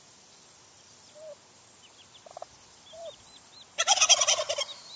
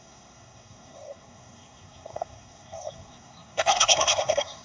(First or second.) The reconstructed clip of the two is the second